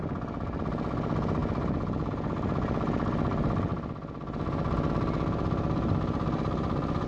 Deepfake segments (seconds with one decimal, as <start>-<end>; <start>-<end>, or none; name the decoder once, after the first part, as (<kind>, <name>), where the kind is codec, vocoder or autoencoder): none